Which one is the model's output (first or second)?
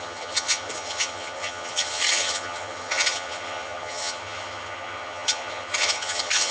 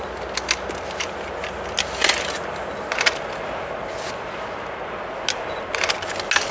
first